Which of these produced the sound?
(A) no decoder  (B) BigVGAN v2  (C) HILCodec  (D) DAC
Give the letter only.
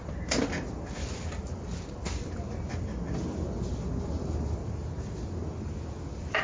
A